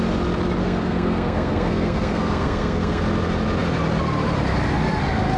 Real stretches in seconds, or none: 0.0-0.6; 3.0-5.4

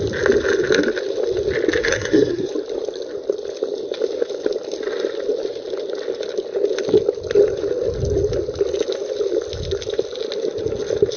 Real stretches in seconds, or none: 0.0-1.8; 2.5-11.2

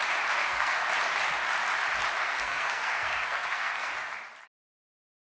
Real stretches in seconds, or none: 0.0-0.4; 0.9-2.2; 3.9-5.2